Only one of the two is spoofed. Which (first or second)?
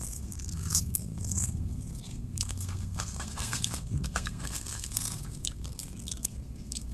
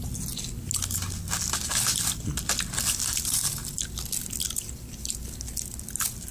first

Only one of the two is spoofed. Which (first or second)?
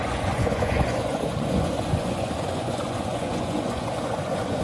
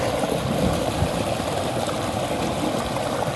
first